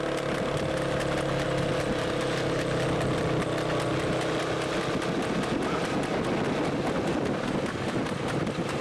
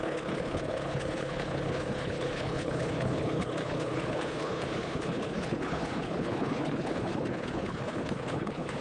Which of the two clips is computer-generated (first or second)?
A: second